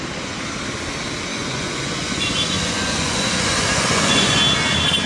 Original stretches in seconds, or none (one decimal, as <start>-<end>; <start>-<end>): 0.0-1.3; 4.4-5.1